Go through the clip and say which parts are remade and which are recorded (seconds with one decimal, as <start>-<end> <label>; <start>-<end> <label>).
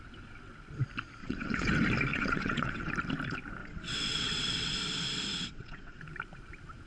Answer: 0.0-1.2 recorded; 1.2-1.7 remade; 1.7-2.1 recorded; 2.1-2.9 remade; 2.9-3.6 recorded; 3.6-4.7 remade; 4.7-5.3 recorded; 5.3-6.0 remade; 6.0-6.9 recorded